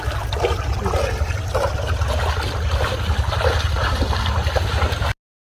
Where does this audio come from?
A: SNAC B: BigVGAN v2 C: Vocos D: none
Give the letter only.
D